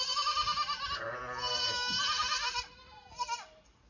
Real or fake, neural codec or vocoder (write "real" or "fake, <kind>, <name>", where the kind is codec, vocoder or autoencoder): real